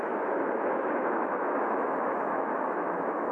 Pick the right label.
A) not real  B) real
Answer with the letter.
A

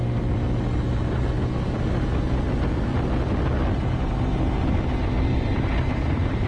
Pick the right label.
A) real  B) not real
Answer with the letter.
A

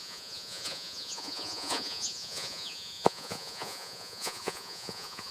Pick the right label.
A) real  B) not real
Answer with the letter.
B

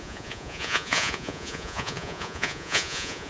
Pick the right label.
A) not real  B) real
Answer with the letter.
A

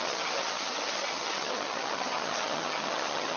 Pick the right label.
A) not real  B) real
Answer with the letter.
A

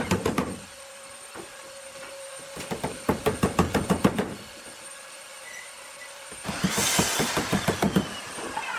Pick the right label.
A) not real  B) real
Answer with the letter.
B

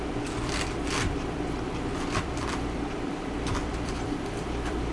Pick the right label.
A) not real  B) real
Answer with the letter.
A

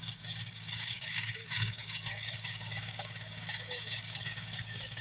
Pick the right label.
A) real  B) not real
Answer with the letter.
B